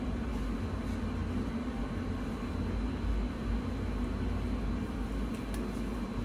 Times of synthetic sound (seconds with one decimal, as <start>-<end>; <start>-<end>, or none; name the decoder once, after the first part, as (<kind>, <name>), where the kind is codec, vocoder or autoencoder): none